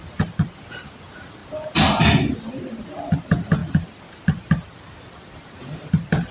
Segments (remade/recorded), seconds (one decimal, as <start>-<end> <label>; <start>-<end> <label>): 0.0-6.3 recorded